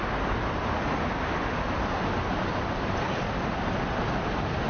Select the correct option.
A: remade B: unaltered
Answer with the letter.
B